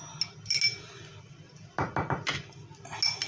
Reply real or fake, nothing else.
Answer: real